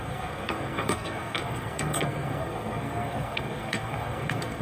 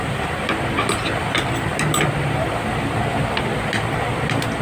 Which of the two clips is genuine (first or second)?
second